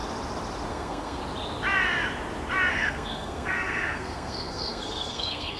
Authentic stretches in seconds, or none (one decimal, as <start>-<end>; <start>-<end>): 0.0-0.7; 1.2-2.7